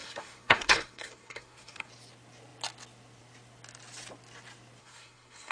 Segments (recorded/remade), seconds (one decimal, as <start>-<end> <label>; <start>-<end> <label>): 0.0-1.9 remade; 1.9-4.8 recorded; 4.8-5.5 remade